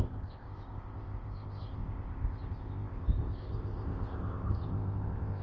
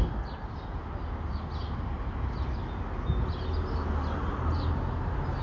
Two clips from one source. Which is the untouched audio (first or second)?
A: second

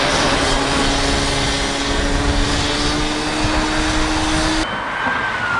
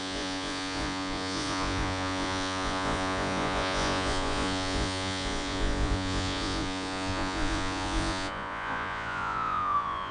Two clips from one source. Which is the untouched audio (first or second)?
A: first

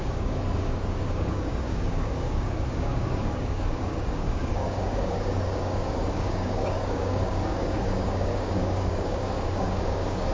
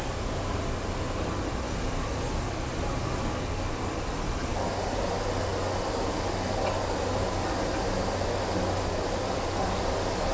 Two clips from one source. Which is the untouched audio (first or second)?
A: second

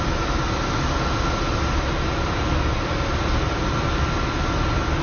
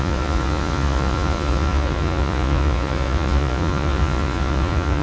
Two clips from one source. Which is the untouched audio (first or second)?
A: first